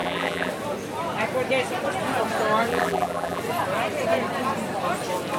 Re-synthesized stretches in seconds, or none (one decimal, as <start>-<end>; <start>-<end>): 0.0-0.5; 2.7-3.4